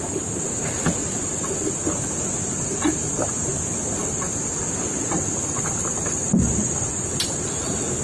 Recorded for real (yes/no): yes